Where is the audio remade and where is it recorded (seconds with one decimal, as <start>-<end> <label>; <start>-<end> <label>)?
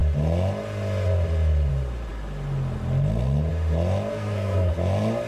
0.0-4.1 recorded; 4.1-4.7 remade; 4.7-5.3 recorded